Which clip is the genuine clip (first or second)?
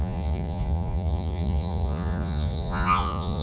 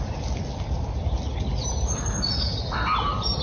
second